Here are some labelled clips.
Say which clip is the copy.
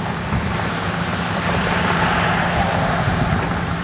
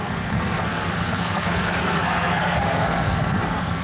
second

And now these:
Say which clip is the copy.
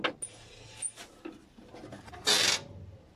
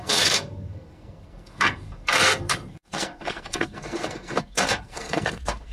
second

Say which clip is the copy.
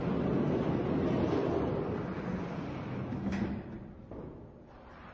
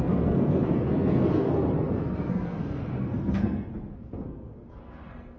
second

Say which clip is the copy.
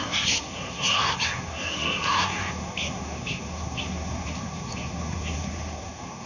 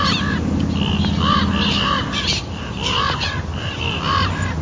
first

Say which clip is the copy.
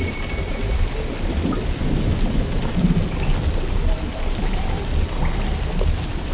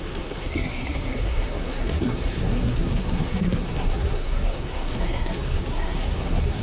second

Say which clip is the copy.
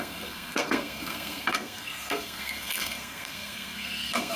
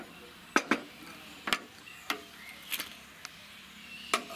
first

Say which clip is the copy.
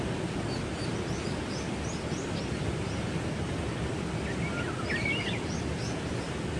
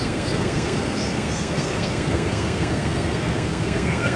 second